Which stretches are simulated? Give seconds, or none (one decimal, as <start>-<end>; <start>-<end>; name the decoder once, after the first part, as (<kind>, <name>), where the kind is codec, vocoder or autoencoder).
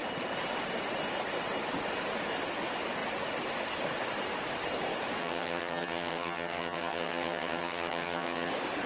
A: 5.2-8.5 (vocoder, HiFi-GAN)